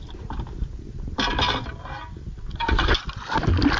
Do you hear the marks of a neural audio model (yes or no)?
no